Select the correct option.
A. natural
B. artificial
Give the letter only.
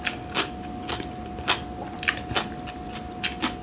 A